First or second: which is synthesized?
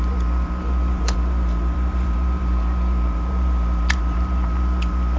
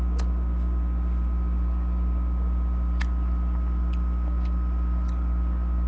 first